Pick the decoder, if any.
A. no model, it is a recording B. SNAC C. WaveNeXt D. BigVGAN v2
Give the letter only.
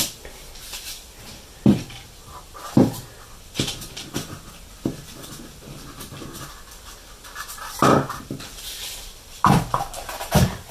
A